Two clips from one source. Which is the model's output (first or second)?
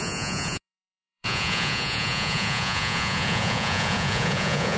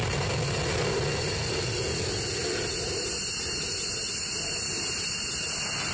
first